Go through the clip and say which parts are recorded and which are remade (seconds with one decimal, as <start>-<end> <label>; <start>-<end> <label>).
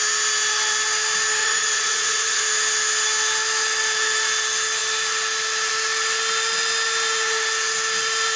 0.0-1.4 recorded; 1.4-2.4 remade; 2.4-8.4 recorded